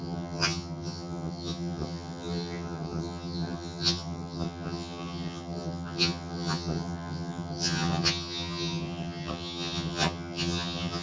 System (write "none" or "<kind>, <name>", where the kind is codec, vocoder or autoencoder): vocoder, HiFi-GAN